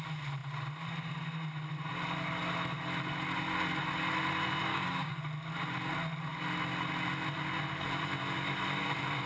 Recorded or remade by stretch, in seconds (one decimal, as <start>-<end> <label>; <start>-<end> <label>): 0.0-4.7 recorded; 4.7-5.2 remade; 5.2-9.3 recorded